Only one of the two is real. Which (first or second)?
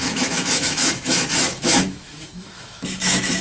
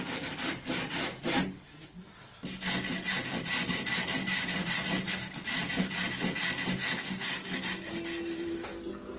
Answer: second